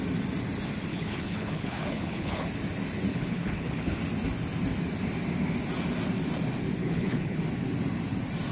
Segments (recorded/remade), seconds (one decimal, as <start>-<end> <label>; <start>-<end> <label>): 0.0-0.9 recorded; 0.9-2.5 remade; 2.5-3.1 recorded; 3.1-4.0 remade; 4.0-6.8 recorded; 6.8-7.4 remade; 7.4-8.5 recorded